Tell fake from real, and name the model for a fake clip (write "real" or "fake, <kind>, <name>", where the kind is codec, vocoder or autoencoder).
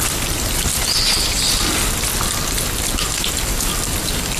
real